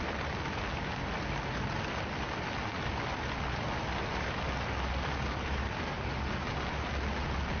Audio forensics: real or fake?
real